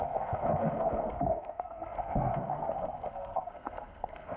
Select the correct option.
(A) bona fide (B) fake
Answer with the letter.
B